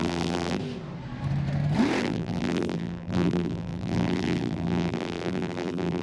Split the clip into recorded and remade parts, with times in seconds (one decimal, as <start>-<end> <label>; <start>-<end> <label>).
0.0-0.6 remade; 0.6-2.0 recorded; 2.0-6.0 remade